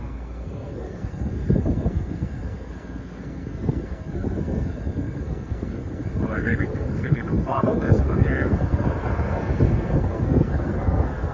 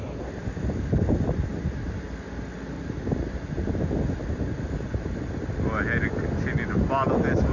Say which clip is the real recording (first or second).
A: second